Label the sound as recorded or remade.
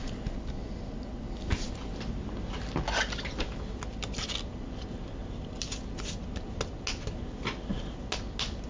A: recorded